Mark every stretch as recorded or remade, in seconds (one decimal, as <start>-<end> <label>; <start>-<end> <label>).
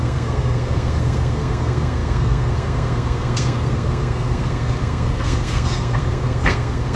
0.0-7.0 remade